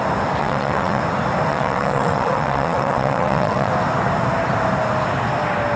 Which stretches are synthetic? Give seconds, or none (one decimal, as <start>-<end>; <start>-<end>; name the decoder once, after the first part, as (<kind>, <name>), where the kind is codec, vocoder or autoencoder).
0.4-1.0 (vocoder, WaveNeXt); 1.5-3.7